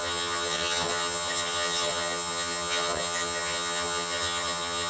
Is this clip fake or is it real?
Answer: fake